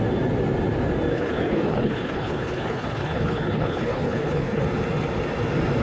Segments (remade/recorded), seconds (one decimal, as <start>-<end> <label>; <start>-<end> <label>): 0.0-1.1 recorded; 1.1-4.6 remade; 4.6-5.8 recorded